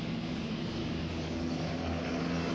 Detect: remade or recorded remade